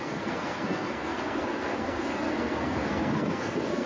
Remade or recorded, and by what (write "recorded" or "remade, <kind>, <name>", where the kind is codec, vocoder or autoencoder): remade, codec, SNAC